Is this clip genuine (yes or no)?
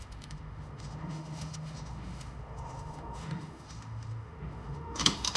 no